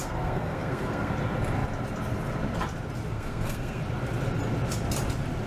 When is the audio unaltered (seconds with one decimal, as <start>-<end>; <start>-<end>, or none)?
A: 1.1-3.1; 3.8-5.5